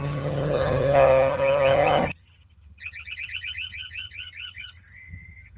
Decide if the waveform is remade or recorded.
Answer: remade